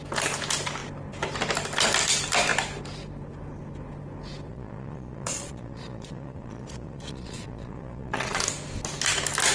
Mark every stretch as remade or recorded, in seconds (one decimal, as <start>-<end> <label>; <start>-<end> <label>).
0.0-4.5 recorded; 4.5-8.4 remade; 8.4-9.5 recorded